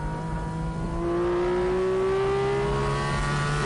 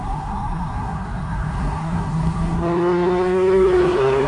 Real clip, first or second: first